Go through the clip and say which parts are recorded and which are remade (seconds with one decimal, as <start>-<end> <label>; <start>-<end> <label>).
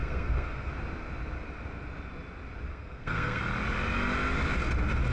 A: 0.0-0.7 remade; 0.7-2.7 recorded; 2.7-3.4 remade; 3.4-5.1 recorded